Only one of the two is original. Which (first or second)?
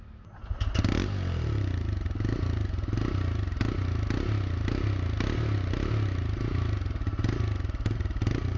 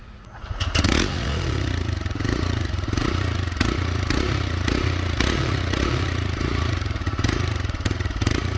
first